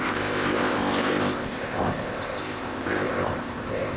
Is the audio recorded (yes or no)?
no